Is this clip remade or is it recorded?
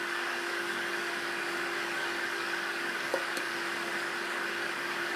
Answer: remade